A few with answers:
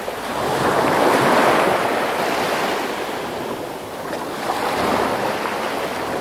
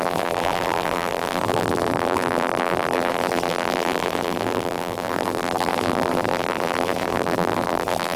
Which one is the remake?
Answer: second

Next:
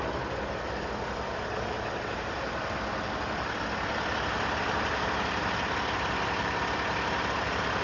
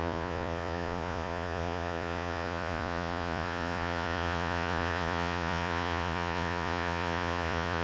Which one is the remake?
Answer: second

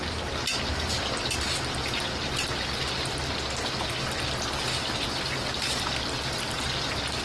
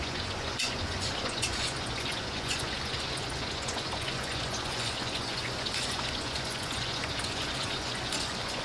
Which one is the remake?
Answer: second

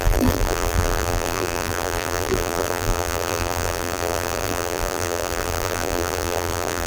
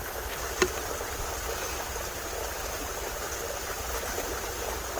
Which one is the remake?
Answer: first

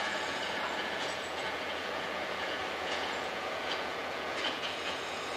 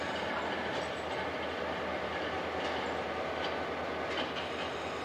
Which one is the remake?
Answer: first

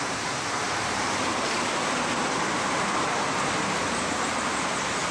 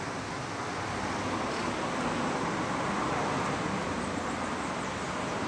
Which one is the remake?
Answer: first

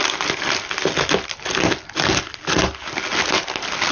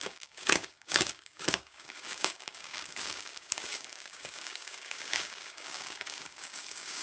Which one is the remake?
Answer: second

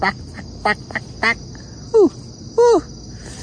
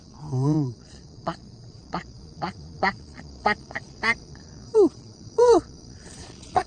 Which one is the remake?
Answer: second